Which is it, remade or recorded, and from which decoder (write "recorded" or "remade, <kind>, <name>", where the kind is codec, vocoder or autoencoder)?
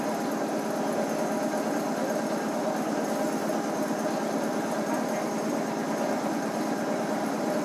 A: recorded